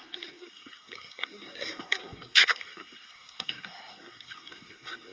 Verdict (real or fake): fake